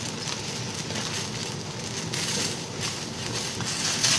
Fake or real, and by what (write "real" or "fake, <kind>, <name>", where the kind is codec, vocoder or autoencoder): real